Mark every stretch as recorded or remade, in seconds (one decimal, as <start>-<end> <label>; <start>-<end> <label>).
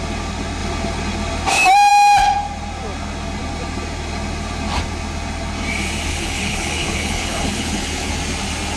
0.0-6.1 recorded; 6.1-8.1 remade; 8.1-8.8 recorded